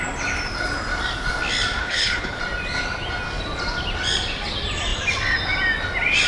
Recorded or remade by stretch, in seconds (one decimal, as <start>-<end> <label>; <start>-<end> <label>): 0.0-1.8 recorded; 1.8-2.4 remade; 2.4-6.3 recorded